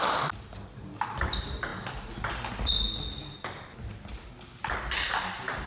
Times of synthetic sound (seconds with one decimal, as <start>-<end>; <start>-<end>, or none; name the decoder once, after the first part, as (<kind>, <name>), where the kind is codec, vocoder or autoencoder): none